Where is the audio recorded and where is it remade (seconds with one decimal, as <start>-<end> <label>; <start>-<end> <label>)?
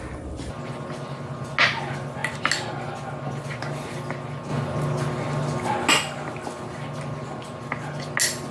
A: 0.0-8.5 recorded